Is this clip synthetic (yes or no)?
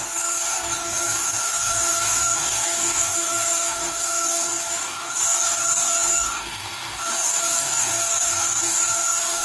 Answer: yes